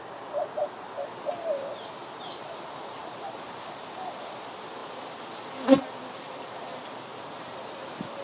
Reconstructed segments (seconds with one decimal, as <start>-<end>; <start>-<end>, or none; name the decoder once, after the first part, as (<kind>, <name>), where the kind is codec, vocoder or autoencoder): 3.0-4.3 (vocoder, BigVGAN v2)